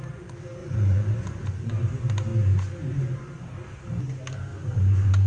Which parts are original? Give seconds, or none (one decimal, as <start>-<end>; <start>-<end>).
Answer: 0.0-0.6; 1.7-5.3